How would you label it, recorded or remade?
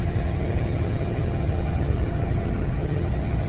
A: remade